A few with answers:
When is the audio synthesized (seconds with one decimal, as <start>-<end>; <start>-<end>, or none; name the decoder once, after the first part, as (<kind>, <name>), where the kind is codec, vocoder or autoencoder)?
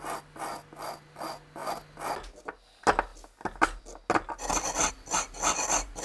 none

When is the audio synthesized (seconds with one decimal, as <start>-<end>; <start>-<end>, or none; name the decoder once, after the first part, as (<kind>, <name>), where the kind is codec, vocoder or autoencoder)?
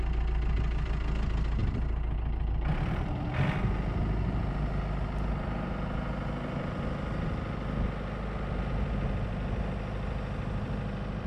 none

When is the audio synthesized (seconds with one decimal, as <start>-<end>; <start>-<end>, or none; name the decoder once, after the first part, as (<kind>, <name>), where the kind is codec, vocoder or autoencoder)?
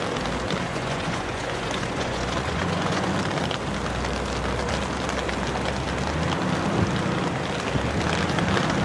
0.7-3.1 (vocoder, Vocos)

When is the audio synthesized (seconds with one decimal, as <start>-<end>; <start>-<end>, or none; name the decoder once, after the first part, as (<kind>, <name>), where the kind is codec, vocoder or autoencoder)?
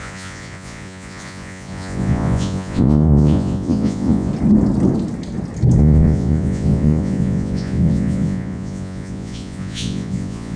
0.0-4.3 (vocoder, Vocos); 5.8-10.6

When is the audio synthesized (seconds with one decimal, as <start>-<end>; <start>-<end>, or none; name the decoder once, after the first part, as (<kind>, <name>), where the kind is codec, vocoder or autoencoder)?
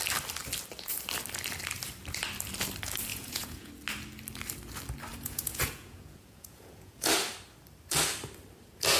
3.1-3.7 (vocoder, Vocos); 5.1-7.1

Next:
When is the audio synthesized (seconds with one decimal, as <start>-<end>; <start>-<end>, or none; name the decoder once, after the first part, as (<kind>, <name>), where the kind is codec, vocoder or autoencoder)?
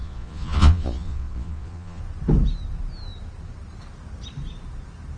0.0-2.0 (vocoder, Vocos)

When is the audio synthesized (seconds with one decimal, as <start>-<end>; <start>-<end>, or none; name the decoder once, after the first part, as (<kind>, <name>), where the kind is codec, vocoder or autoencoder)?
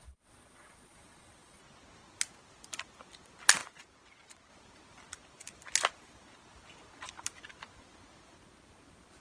0.0-1.6 (vocoder, Vocos)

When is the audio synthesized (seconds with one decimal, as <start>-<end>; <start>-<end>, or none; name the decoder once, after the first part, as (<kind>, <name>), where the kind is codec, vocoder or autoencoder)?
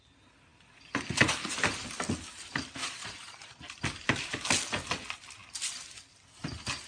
2.8-3.6 (vocoder, Vocos)